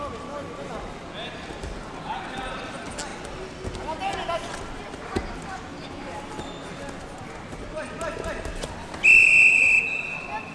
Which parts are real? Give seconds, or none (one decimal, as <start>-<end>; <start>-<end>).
0.0-10.5